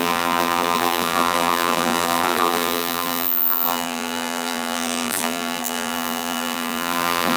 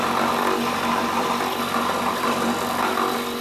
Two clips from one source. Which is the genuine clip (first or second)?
second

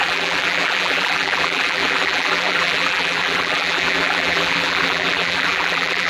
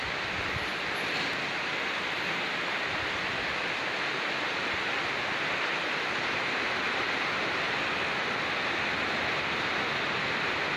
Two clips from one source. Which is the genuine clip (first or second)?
second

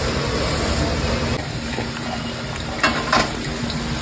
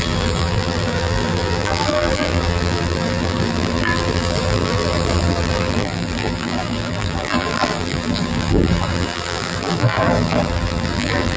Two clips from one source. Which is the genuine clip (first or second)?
first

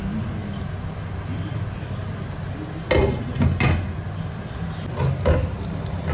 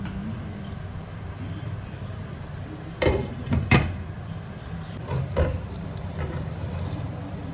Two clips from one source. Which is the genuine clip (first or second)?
first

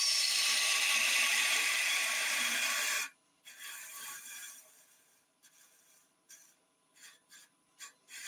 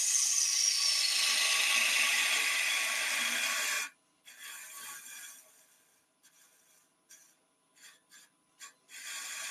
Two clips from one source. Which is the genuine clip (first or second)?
second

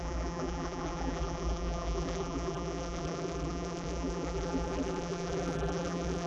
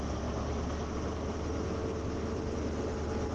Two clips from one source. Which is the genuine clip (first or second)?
second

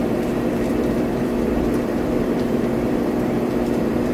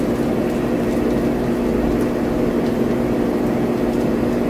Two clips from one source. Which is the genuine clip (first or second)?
second